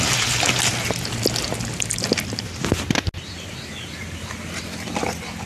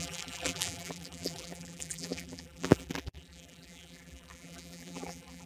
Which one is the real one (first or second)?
first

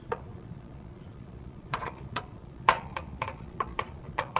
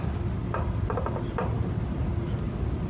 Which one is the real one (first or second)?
second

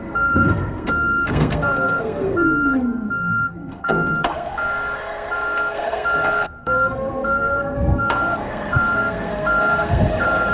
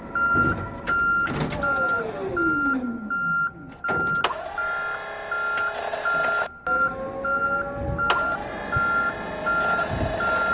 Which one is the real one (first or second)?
second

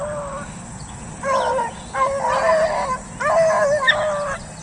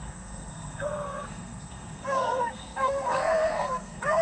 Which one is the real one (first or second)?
first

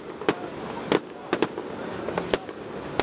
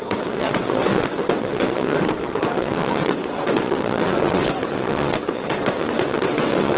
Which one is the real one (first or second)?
first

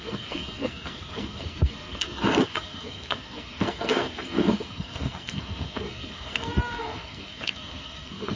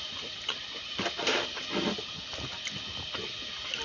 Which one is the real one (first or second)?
second